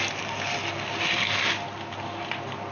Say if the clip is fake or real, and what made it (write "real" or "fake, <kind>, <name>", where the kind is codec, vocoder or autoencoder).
real